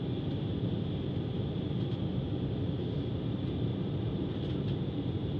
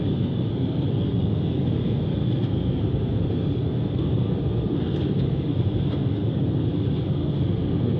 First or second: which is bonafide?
first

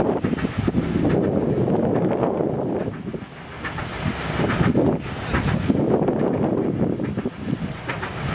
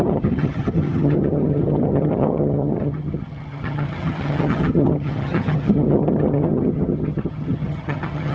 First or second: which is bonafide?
first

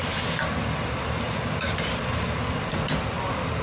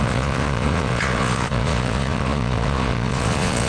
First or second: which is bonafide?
first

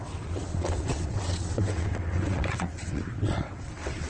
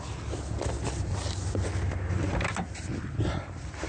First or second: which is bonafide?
second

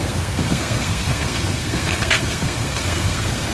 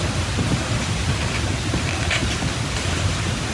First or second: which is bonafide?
second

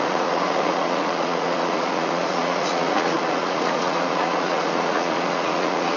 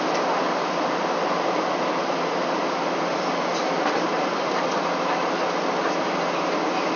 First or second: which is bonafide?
second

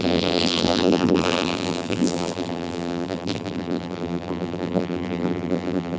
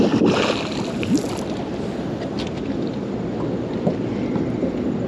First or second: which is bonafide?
second